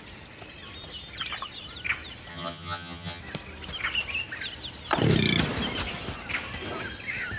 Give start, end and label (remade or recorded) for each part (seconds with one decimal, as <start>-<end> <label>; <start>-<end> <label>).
0.0-2.3 recorded; 2.3-3.2 remade; 3.2-7.4 recorded

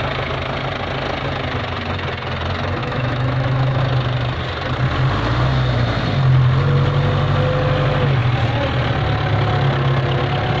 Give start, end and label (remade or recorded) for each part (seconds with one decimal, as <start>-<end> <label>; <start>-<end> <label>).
0.0-2.8 recorded; 2.8-3.8 remade; 3.8-10.6 recorded

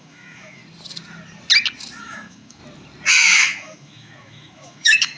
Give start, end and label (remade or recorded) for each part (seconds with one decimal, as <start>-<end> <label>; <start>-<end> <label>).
0.0-0.6 remade; 0.6-2.0 recorded; 2.0-2.6 remade; 2.6-3.1 recorded; 3.1-5.2 remade

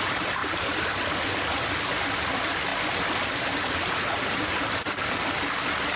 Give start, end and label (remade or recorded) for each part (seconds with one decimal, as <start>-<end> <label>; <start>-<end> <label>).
0.0-6.0 recorded

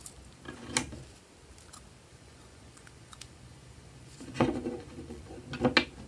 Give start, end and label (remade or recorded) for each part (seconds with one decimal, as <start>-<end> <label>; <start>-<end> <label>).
0.0-2.1 recorded; 2.1-5.4 remade; 5.4-6.1 recorded

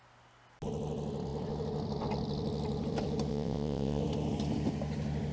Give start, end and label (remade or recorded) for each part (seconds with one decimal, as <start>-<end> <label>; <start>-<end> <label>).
0.0-3.3 recorded; 3.3-4.0 remade; 4.0-5.3 recorded